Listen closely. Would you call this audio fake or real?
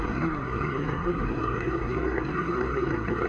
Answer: fake